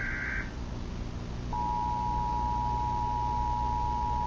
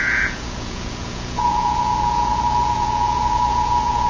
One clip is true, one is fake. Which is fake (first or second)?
second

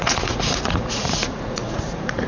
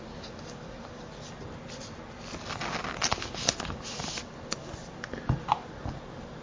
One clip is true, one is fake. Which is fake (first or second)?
first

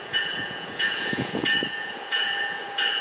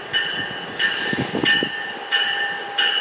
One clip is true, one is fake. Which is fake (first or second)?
first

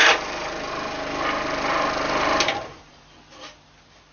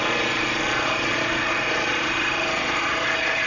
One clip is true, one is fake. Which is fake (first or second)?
second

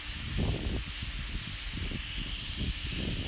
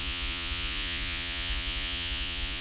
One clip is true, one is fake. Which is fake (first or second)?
second